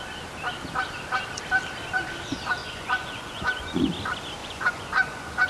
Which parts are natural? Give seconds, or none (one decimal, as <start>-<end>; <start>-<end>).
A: 0.0-2.6; 3.9-4.4